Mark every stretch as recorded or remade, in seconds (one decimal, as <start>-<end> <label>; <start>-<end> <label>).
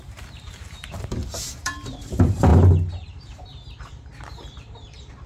0.0-2.5 remade; 2.5-3.0 recorded; 3.0-5.3 remade